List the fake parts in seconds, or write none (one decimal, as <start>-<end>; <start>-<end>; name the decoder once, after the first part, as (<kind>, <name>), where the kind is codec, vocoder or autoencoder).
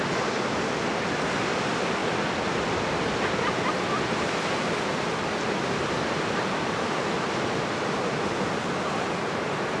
none